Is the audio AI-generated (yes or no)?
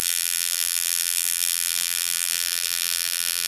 yes